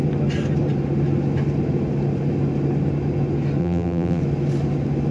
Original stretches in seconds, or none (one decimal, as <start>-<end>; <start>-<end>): 0.0-3.6; 4.2-5.1